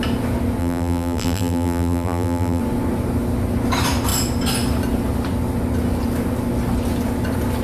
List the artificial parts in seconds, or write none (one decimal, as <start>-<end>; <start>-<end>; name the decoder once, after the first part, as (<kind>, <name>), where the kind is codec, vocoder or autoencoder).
0.6-2.6 (vocoder, BigVGAN v2)